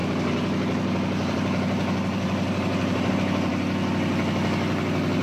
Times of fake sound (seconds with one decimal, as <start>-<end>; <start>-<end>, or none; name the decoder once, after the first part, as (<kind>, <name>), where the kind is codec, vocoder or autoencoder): 0.0-3.1 (vocoder, BigVGAN v2)